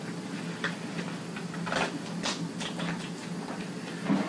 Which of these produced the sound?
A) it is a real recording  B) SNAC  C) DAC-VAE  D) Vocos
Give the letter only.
A